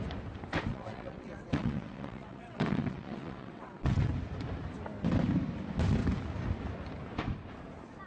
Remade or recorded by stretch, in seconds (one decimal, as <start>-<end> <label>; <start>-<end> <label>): 0.0-0.7 recorded; 0.7-4.1 remade; 4.1-8.1 recorded